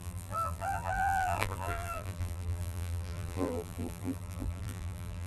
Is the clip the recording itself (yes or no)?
no